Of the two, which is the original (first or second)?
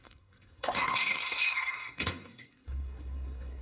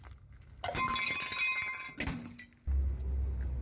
second